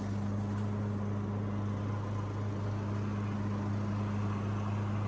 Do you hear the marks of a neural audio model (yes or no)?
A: no